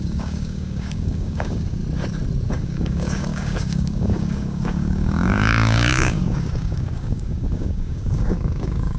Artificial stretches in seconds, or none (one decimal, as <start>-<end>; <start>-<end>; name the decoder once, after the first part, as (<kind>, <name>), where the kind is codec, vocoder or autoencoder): 0.0-1.8 (codec, DAC); 2.5-9.0